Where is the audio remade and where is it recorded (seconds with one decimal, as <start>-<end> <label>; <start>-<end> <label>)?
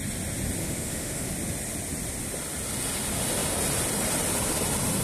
0.0-0.6 recorded; 0.6-1.3 remade; 1.3-5.0 recorded